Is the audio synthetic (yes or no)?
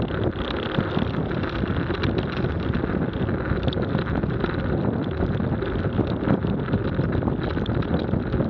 no